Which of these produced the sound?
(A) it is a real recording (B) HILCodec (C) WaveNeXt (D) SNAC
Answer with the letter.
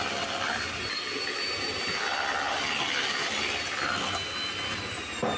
A